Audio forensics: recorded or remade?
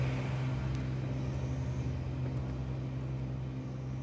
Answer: recorded